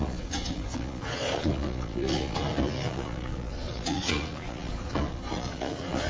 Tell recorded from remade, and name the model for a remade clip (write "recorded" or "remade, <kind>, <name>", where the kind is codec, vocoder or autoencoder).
remade, vocoder, Vocos